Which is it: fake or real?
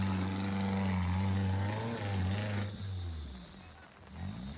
real